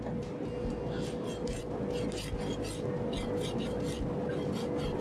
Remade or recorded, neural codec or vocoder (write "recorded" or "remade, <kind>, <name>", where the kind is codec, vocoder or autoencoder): recorded